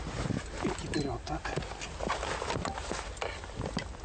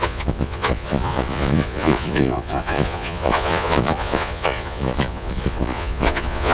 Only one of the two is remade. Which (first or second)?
second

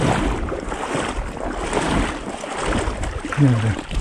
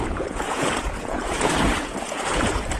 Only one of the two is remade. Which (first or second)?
second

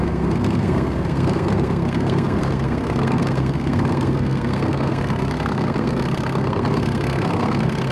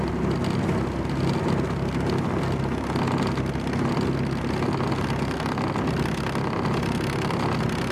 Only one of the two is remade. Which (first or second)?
first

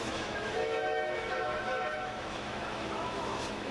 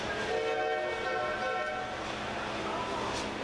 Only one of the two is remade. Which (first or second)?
first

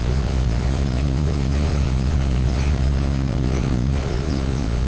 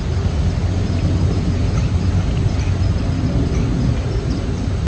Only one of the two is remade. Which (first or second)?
first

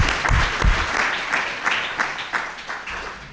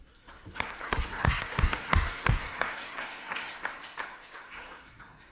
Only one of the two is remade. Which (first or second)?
second